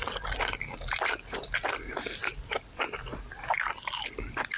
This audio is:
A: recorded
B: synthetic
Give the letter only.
A